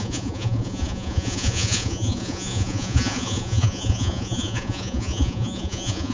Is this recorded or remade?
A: remade